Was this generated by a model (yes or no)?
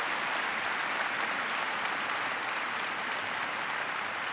no